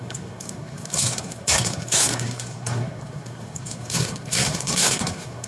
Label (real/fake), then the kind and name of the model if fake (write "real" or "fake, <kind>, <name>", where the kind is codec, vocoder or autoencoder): fake, codec, SNAC